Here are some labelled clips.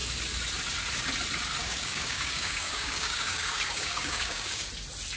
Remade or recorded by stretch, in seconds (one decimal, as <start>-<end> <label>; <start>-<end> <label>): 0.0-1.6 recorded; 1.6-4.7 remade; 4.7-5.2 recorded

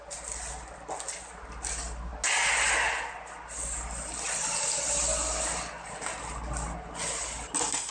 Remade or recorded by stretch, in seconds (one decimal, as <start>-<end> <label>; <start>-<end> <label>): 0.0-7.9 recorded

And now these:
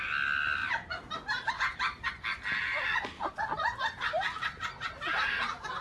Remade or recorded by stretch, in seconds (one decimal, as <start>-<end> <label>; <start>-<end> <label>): 0.0-0.6 recorded; 0.6-1.5 remade; 1.5-2.7 recorded; 2.7-3.4 remade; 3.4-5.8 recorded

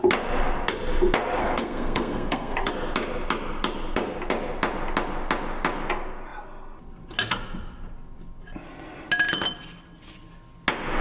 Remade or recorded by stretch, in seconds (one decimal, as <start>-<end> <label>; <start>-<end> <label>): 0.0-1.4 recorded; 1.4-2.7 remade; 2.7-11.0 recorded